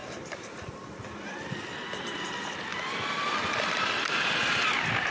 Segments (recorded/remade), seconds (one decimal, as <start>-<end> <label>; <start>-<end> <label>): 0.0-2.3 remade; 2.3-2.7 recorded; 2.7-4.3 remade; 4.3-5.1 recorded